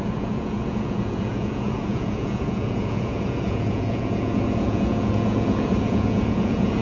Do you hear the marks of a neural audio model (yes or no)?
yes